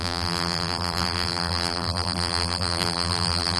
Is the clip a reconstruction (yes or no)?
yes